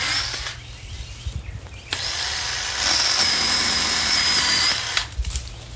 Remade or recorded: recorded